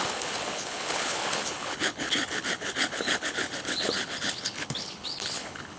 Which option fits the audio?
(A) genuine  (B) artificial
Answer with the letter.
B